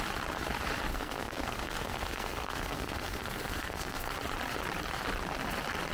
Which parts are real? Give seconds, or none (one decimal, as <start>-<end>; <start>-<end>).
0.0-0.9; 4.1-5.9

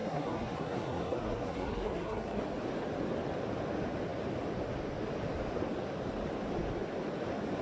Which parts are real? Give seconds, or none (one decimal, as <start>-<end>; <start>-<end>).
2.4-7.6

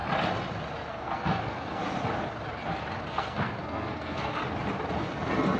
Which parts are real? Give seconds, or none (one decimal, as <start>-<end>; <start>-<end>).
0.0-0.9; 1.8-3.1; 4.4-5.6

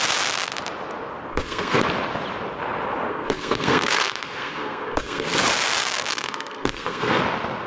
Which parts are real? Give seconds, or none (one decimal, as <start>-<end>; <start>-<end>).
0.0-1.3; 1.8-3.1; 5.4-6.1; 7.2-7.7

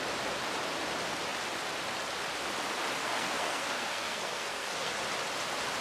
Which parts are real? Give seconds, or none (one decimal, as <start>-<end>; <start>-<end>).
0.0-3.0; 4.9-5.8